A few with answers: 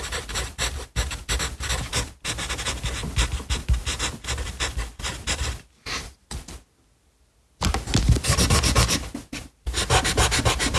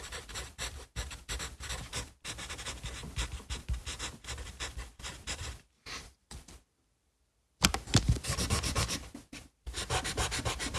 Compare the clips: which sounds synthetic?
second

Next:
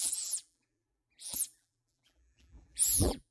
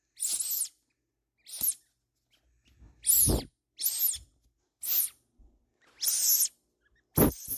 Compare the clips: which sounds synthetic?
first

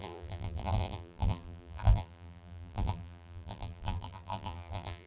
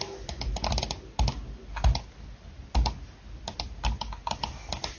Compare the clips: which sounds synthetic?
first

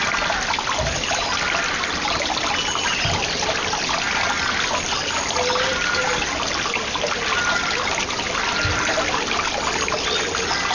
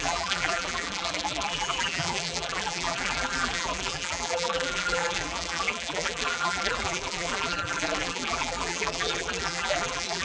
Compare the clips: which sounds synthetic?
second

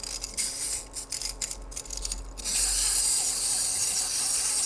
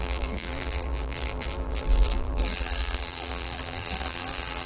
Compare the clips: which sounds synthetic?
second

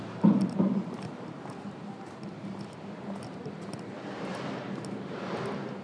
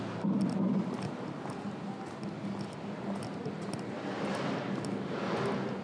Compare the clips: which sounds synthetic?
first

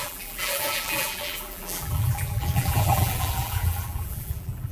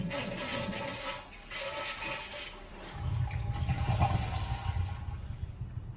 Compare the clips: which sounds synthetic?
first